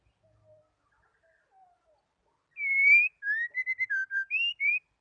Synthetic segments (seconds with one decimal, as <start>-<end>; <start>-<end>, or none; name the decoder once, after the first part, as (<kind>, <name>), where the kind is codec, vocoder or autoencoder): 0.0-1.1 (vocoder, BigVGAN v2); 4.1-5.0

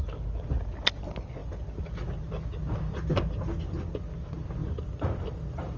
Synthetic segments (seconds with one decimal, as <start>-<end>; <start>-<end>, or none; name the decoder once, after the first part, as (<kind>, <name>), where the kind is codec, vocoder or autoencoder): 4.6-5.8 (vocoder, BigVGAN v2)

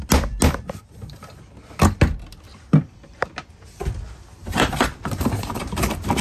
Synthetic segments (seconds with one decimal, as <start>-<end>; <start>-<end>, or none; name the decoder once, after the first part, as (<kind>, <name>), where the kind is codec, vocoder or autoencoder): 2.5-3.3 (vocoder, BigVGAN v2); 4.4-6.2

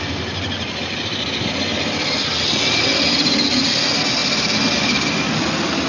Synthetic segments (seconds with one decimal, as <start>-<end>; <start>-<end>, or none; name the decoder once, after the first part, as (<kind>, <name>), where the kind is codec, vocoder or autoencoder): none

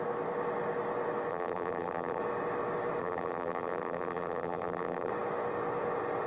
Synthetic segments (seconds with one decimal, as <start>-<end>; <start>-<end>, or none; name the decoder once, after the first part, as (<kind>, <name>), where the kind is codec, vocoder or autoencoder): 1.3-2.2 (vocoder, BigVGAN v2); 3.0-5.1